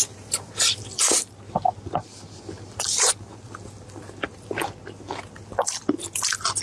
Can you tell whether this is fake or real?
real